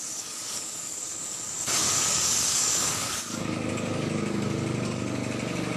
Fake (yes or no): yes